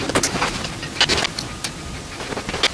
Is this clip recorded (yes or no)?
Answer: yes